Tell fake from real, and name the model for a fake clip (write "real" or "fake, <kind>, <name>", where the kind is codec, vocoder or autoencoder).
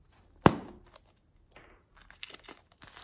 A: real